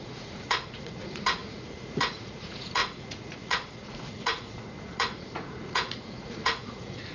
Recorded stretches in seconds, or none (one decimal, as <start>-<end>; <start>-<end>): none